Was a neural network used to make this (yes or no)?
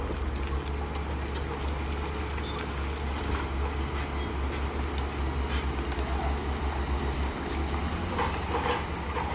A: no